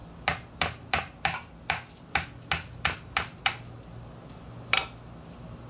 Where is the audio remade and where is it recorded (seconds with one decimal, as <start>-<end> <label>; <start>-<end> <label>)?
0.0-5.7 recorded